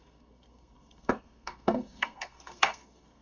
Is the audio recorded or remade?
remade